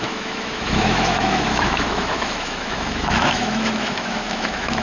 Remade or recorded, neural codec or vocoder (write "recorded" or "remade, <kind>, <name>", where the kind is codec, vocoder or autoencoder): remade, autoencoder, DAC-VAE